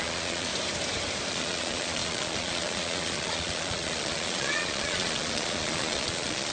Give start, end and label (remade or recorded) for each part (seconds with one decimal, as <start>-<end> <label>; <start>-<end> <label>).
0.0-0.5 remade; 0.5-1.3 recorded; 1.3-6.5 remade